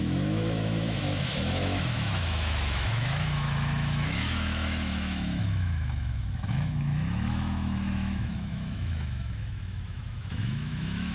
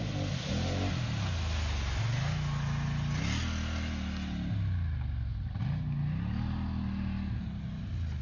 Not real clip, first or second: first